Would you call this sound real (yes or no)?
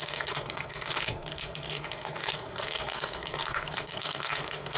no